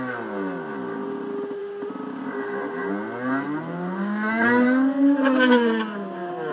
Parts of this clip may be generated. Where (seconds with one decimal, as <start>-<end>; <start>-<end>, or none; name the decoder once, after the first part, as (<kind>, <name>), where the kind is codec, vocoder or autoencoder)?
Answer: none